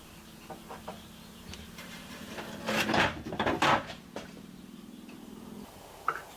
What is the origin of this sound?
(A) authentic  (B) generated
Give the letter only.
B